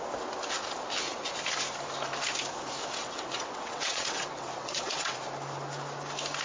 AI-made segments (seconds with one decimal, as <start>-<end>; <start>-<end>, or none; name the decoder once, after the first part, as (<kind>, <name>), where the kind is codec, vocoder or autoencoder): 3.0-5.2 (vocoder, WaveNeXt)